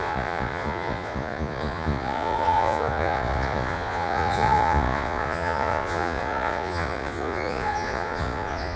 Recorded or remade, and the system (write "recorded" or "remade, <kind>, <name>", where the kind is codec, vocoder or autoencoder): remade, vocoder, Vocos